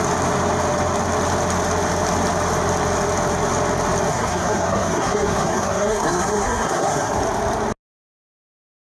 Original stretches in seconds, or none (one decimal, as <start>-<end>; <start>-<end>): 0.0-4.1; 7.2-8.9